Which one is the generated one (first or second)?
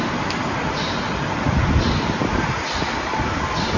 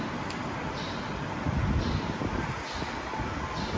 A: first